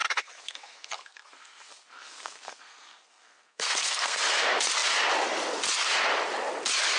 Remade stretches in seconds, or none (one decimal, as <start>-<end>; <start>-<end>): 0.0-4.2